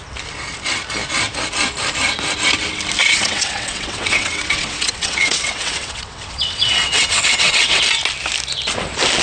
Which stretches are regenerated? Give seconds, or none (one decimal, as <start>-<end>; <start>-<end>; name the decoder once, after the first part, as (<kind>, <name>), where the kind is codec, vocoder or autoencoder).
3.0-7.8 (vocoder, WaveNeXt)